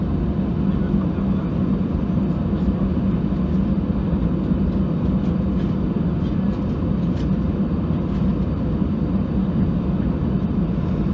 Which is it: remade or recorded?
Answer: recorded